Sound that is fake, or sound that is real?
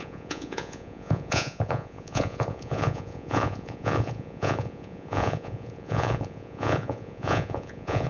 fake